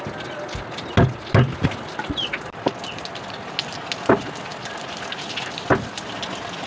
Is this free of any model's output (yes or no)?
yes